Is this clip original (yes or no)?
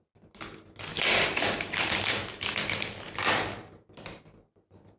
yes